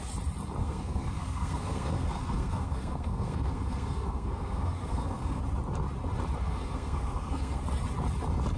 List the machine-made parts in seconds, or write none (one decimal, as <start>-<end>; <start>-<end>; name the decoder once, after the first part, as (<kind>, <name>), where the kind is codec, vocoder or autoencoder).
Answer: 0.6-5.4 (codec, SNAC); 6.4-7.6